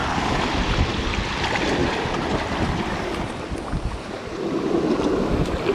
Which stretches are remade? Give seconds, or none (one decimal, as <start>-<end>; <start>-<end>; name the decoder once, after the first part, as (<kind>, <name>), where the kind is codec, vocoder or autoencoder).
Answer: 0.0-1.2 (vocoder, BigVGAN v2); 1.8-4.0